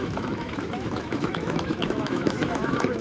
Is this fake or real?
fake